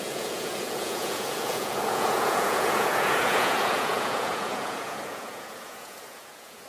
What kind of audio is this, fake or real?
fake